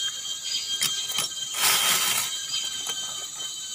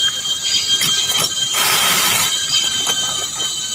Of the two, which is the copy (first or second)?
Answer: second